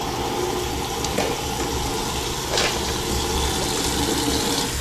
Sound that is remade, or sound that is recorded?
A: recorded